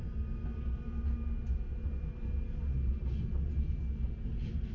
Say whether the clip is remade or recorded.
recorded